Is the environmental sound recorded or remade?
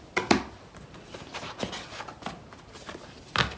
recorded